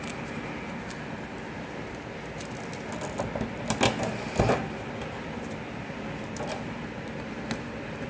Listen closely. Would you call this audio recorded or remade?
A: recorded